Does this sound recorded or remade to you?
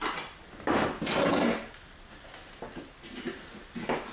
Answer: recorded